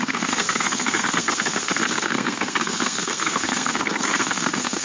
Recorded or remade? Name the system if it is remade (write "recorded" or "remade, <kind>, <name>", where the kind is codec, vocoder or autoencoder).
remade, codec, SNAC